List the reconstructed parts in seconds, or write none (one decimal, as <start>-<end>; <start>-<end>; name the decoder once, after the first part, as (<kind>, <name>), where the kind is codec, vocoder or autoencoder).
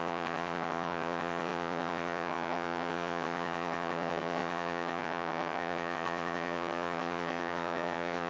0.0-8.3 (vocoder, HiFi-GAN)